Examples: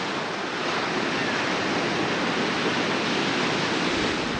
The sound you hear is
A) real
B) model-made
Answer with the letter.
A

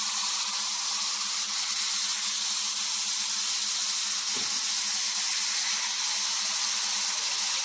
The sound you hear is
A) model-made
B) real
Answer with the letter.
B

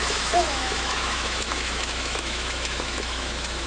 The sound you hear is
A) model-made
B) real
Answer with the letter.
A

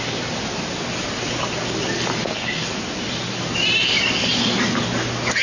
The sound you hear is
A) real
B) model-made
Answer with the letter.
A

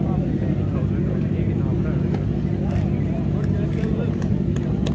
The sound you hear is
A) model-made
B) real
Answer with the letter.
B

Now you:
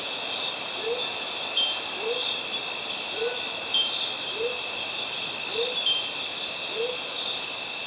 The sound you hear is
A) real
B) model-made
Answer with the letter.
A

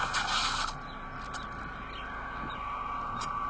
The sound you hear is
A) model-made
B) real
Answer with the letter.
B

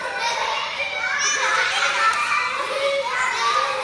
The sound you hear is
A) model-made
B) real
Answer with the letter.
B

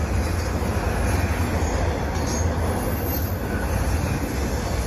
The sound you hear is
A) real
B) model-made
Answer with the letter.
A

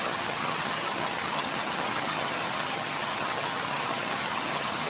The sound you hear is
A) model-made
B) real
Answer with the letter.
A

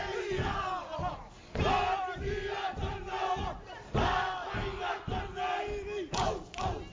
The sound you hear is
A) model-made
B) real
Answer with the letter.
B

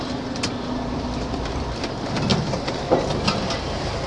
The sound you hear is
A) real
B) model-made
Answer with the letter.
B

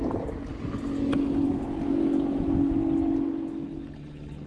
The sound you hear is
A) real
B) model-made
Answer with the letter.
A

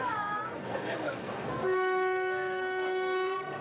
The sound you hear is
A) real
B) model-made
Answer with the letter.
B